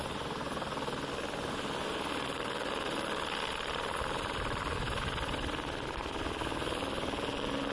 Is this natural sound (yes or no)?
yes